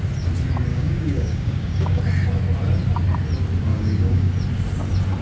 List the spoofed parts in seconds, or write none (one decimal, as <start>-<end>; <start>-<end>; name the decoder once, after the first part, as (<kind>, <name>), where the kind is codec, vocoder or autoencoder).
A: 0.7-2.0 (codec, DAC); 3.7-4.3